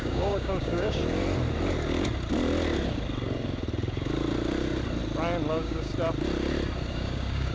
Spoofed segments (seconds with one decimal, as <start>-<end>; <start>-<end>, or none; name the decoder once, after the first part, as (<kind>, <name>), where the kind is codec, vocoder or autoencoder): 0.0-1.0 (codec, DAC); 5.5-5.9; 6.9-7.5